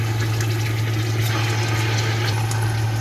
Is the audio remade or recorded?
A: recorded